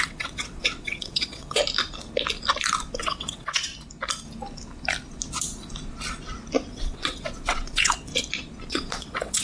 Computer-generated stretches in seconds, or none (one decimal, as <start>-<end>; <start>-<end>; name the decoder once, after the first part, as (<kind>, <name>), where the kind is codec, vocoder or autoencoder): 0.0-1.6 (vocoder, WaveNeXt); 3.0-3.7; 6.7-8.1; 8.7-9.4